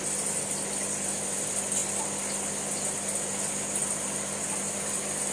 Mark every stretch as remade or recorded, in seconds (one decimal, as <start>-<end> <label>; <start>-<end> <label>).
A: 0.0-5.3 recorded